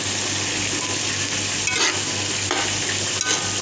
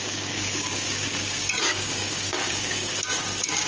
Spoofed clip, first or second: second